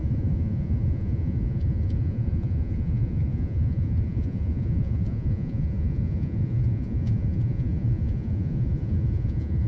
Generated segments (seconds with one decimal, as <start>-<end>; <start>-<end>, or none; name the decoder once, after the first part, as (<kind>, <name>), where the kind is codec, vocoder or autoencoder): 0.0-9.7 (vocoder, Vocos)

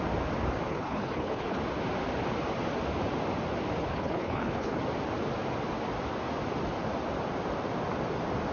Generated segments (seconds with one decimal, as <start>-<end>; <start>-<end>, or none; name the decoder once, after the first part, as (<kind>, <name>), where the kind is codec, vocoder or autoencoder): 0.7-1.6 (codec, HILCodec); 3.8-4.8